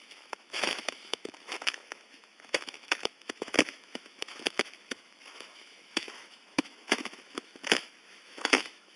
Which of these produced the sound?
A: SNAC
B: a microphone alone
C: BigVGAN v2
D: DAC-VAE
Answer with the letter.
D